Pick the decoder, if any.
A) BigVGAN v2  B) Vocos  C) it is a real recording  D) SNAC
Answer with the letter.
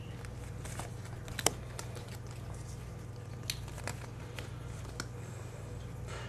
C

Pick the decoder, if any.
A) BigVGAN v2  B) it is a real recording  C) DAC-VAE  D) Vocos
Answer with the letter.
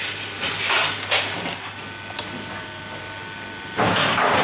B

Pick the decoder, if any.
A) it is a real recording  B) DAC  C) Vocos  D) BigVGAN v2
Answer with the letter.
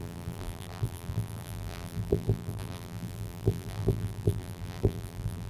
D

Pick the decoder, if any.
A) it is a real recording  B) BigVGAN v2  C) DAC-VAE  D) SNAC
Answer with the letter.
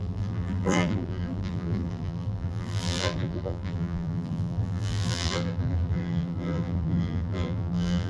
B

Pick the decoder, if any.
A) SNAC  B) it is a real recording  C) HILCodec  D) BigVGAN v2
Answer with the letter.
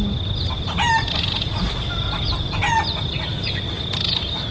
B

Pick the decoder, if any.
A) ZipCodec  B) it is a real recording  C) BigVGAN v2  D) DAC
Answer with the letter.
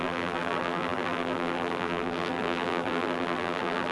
C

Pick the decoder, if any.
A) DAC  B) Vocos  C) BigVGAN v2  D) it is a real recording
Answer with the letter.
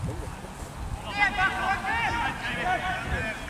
D